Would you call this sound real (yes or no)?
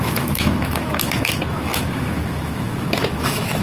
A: no